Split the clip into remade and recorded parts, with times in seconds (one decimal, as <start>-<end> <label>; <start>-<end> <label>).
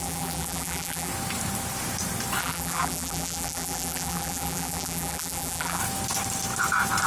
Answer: 0.0-1.1 remade; 1.1-2.4 recorded; 2.4-5.8 remade; 5.8-7.1 recorded